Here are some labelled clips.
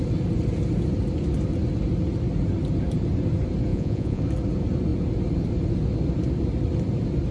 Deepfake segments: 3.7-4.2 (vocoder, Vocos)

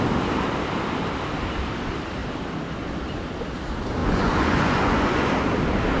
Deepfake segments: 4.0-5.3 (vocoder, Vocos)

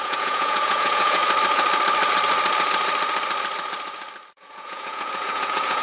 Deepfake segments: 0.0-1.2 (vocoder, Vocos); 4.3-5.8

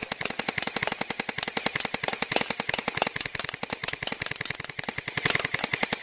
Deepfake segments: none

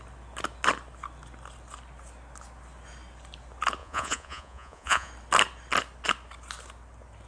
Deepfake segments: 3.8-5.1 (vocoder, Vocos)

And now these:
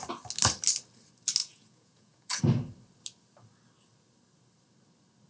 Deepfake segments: 1.4-2.4 (vocoder, Vocos)